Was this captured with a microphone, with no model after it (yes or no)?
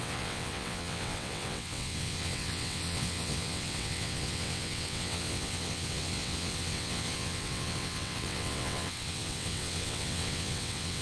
no